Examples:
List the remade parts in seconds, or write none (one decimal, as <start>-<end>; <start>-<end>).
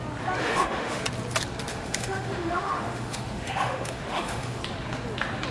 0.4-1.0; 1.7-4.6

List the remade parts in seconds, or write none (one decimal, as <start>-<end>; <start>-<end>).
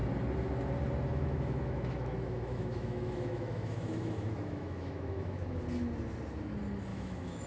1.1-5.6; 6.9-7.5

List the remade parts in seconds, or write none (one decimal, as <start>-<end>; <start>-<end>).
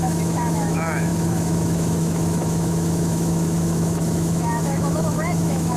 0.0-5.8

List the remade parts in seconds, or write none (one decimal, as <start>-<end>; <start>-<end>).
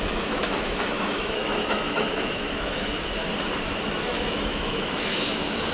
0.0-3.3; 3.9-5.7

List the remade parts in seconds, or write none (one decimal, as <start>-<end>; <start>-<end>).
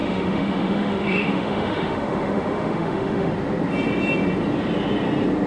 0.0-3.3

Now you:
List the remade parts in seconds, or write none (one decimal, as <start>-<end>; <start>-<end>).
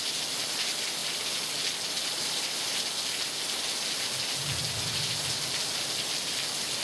none